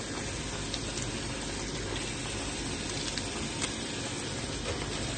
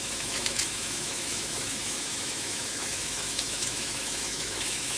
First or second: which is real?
first